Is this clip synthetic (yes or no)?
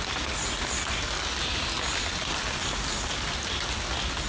no